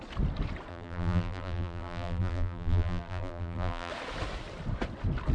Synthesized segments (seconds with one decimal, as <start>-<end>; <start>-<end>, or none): 0.7-3.9